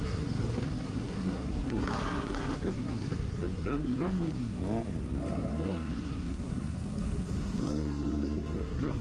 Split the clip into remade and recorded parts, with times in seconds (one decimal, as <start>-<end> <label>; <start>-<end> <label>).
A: 0.0-4.6 remade; 4.6-5.2 recorded; 5.2-9.0 remade